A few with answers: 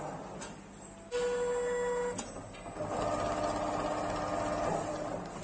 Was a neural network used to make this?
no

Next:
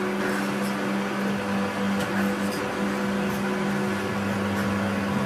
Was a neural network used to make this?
no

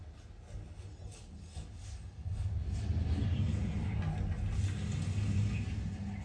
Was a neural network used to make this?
no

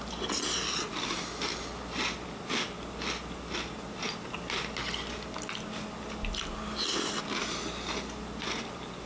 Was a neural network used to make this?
no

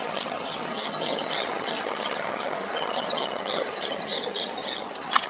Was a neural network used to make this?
yes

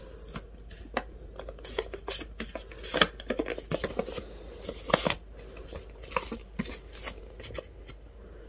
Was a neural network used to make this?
no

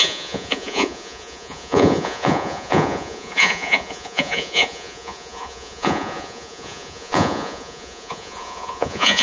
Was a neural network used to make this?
yes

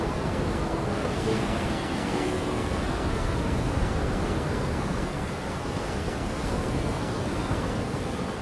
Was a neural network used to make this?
yes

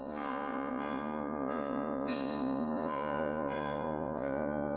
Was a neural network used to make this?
yes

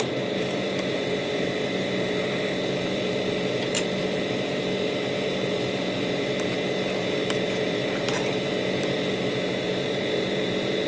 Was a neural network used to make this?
yes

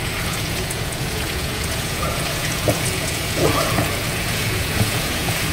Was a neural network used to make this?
yes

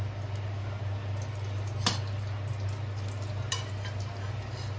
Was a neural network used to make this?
no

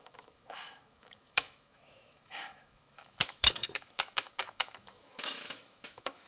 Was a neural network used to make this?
yes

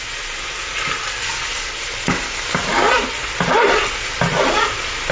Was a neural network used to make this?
no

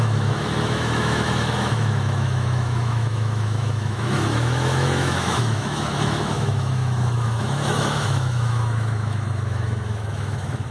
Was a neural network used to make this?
yes